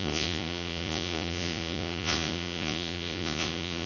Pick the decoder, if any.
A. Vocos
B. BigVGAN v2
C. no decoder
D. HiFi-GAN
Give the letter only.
A